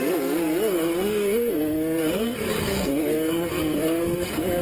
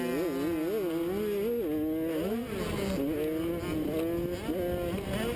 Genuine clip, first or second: second